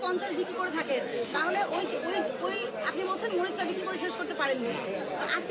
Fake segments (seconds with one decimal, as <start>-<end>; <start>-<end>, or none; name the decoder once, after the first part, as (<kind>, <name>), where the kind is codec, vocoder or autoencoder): 1.1-1.8 (autoencoder, DAC-VAE)